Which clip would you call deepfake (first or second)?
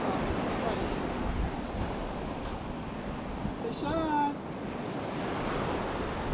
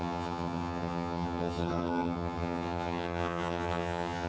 second